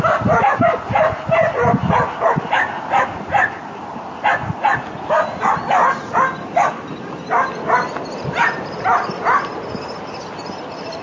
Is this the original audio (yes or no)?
yes